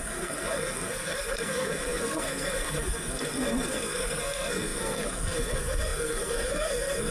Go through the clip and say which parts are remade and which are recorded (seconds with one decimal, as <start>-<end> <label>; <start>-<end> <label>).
0.0-7.1 remade